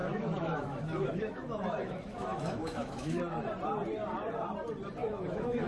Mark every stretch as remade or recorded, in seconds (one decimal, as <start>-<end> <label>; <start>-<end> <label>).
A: 0.0-3.4 remade; 3.4-5.0 recorded; 5.0-5.7 remade